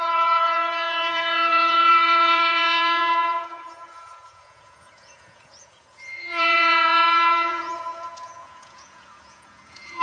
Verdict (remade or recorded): remade